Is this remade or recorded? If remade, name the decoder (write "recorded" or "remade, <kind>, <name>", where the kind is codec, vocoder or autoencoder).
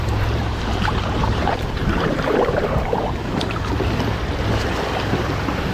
remade, vocoder, BigVGAN v2